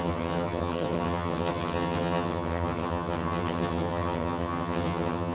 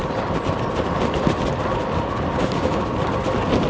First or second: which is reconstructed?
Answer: first